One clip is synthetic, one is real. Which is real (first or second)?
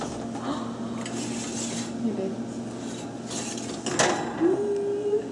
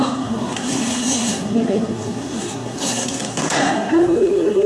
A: first